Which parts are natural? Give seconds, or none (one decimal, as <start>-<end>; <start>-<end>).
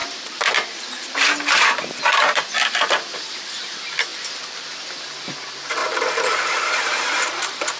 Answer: 2.4-4.1; 4.8-5.8